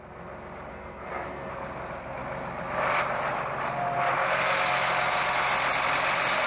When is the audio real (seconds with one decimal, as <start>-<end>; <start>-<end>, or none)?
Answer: 0.0-0.7; 1.5-6.5